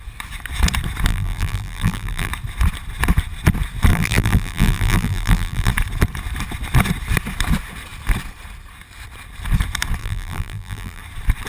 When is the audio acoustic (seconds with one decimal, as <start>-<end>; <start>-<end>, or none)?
0.0-1.1; 2.3-3.9; 5.7-10.0; 11.0-11.5